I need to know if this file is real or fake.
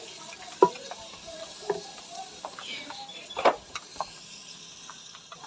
real